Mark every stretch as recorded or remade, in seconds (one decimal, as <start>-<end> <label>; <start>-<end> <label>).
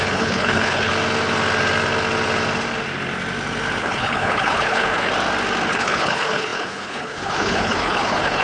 0.0-0.9 remade; 0.9-3.8 recorded; 3.8-5.1 remade; 5.1-5.7 recorded; 5.7-8.4 remade